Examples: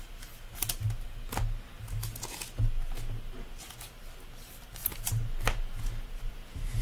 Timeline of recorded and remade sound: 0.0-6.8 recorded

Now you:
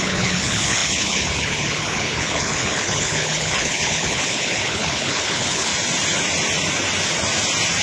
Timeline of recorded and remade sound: 0.0-5.7 remade; 5.7-7.8 recorded

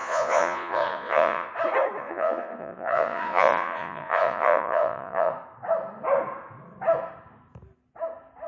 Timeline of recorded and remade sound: 0.0-1.5 remade; 1.5-2.0 recorded; 2.0-5.3 remade; 5.3-8.5 recorded

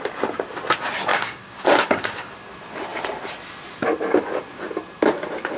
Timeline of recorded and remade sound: 0.0-1.1 recorded; 1.1-2.3 remade; 2.3-5.6 recorded

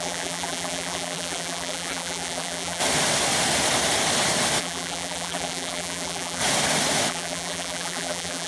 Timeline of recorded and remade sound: 0.0-2.8 remade; 2.8-4.6 recorded; 4.6-6.4 remade; 6.4-7.1 recorded; 7.1-8.5 remade

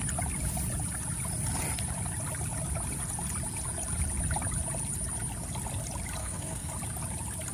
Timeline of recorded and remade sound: 0.0-6.2 recorded; 6.2-6.7 remade; 6.7-7.5 recorded